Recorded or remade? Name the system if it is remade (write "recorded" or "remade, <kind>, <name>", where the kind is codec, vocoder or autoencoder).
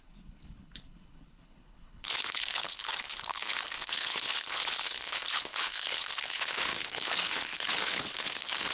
remade, codec, HILCodec